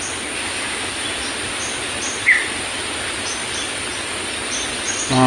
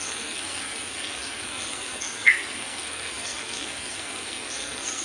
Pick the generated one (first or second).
second